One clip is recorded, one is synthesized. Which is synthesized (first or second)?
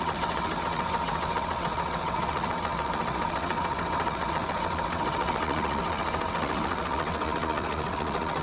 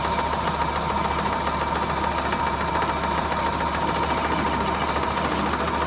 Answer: first